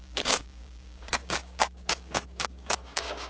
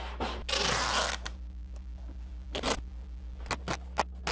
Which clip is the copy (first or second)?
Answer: first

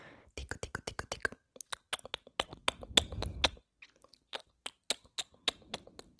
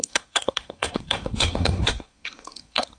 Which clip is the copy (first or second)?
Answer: second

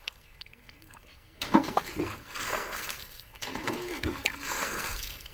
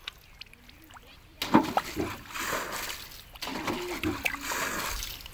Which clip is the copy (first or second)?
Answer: first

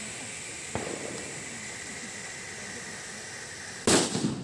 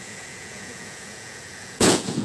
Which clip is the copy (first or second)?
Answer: second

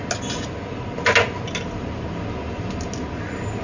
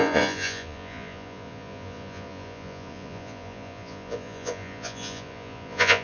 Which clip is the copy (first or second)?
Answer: second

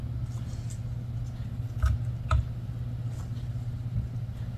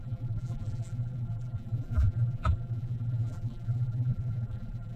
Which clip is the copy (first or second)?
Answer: second